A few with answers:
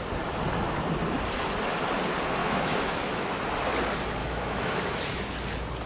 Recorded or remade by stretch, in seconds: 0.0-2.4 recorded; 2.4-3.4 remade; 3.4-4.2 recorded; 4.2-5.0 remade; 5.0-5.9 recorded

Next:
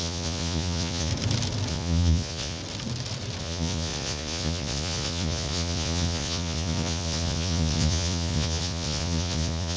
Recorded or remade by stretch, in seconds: 0.0-1.1 remade; 1.1-1.7 recorded; 1.7-2.6 remade; 2.6-3.4 recorded; 3.4-9.8 remade

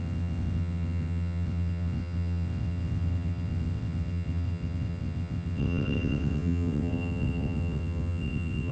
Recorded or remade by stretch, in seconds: 0.0-8.7 remade

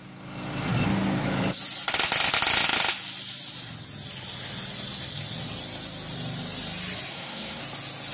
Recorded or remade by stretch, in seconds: 0.0-7.1 recorded; 7.1-7.6 remade; 7.6-8.1 recorded